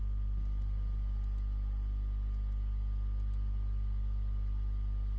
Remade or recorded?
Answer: recorded